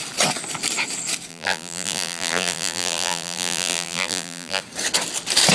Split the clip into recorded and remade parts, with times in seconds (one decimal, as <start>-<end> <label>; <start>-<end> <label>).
0.0-1.3 recorded; 1.3-4.6 remade; 4.6-5.5 recorded